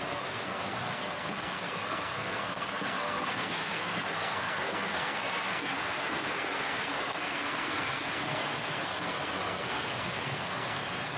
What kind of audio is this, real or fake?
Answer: fake